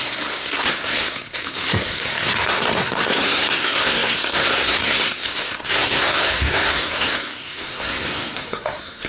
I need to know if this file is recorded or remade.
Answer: remade